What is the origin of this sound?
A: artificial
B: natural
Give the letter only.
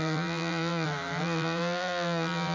A